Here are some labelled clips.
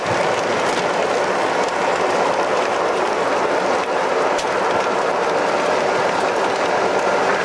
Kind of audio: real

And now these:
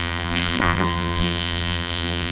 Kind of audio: fake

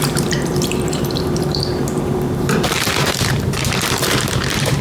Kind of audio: fake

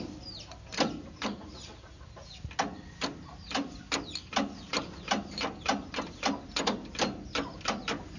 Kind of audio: real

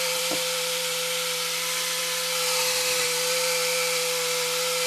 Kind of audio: fake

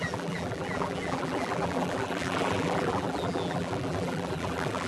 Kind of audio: fake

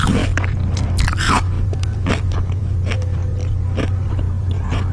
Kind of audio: fake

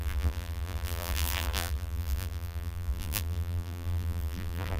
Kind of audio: fake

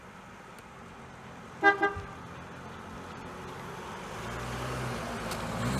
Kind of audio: real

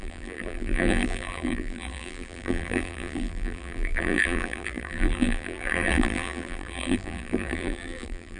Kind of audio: fake